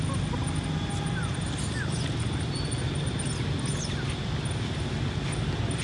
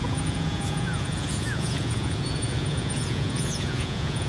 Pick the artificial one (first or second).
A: second